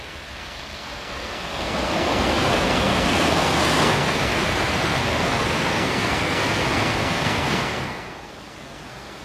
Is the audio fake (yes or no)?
yes